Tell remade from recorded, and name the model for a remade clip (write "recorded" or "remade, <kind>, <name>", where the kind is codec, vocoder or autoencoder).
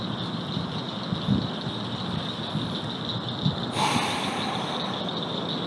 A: recorded